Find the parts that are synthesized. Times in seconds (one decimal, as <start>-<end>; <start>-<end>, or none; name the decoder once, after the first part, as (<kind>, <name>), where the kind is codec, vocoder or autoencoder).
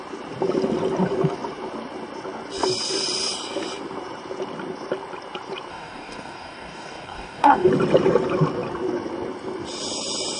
5.7-7.7 (codec, DAC)